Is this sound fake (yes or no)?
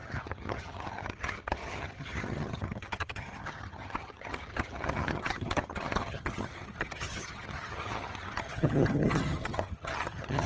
yes